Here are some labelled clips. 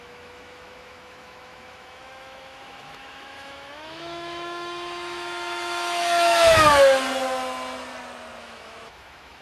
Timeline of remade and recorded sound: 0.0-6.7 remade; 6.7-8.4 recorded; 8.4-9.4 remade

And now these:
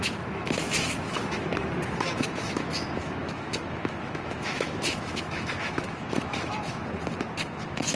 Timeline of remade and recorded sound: 0.0-1.5 remade; 1.5-2.0 recorded; 2.0-6.8 remade; 6.8-7.5 recorded; 7.5-8.0 remade

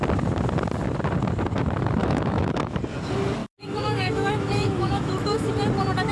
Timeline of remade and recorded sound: 0.0-2.0 recorded; 2.0-2.8 remade; 2.8-3.4 recorded; 3.4-5.5 remade; 5.5-6.1 recorded

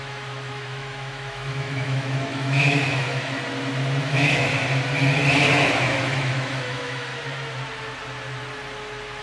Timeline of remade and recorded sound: 0.0-3.4 remade; 3.4-4.0 recorded; 4.0-4.5 remade; 4.5-5.7 recorded; 5.7-7.1 remade; 7.1-9.2 recorded